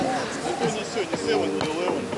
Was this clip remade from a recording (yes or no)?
no